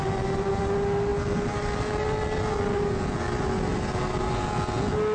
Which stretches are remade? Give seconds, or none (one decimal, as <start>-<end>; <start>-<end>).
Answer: 0.0-0.6; 3.7-4.3